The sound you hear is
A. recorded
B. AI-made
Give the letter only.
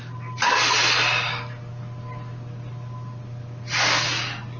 A